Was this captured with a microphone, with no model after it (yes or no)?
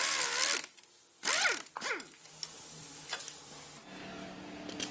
yes